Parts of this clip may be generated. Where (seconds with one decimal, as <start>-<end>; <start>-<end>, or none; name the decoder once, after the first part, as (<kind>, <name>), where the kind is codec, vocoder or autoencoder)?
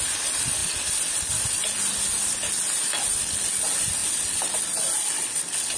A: 4.0-4.5 (vocoder, BigVGAN v2)